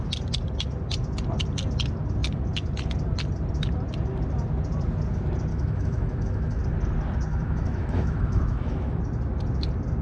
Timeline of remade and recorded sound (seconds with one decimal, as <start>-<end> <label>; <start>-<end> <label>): 0.0-5.5 recorded; 5.5-6.6 remade; 6.6-7.3 recorded; 7.3-9.0 remade; 9.0-10.0 recorded